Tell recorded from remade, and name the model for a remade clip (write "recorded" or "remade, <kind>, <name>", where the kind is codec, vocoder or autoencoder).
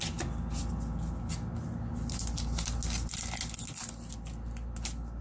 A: recorded